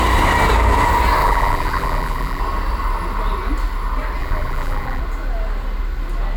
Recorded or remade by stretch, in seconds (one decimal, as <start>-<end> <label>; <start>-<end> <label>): 0.0-1.2 recorded; 1.2-2.4 remade; 2.4-4.2 recorded; 4.2-5.0 remade; 5.0-6.4 recorded